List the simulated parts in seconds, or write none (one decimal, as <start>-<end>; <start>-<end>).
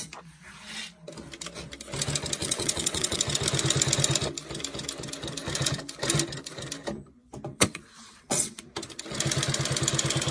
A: 2.4-3.2; 7.5-8.6